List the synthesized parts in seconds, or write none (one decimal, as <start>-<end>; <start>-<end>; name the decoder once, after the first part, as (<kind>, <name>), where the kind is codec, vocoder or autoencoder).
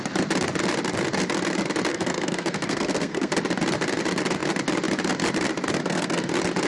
1.9-3.3 (codec, SNAC); 5.8-6.3